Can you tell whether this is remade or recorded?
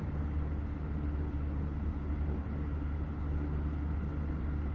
recorded